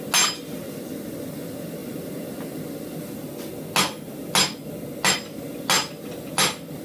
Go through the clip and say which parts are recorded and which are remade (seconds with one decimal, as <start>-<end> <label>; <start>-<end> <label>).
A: 0.0-1.8 recorded; 1.8-2.6 remade; 2.6-6.8 recorded